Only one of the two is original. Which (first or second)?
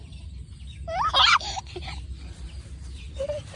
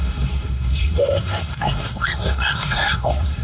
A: first